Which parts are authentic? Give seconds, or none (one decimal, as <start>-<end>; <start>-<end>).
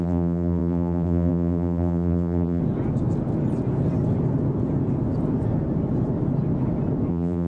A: 2.6-7.1